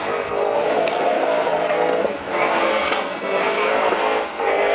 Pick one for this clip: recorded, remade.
remade